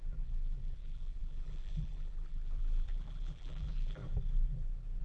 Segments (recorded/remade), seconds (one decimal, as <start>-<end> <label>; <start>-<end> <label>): 0.0-4.0 remade; 4.0-5.0 recorded